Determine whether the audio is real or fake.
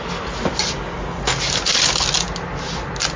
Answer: real